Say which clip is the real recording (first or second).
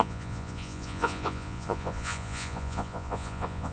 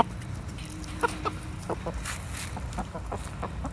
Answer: second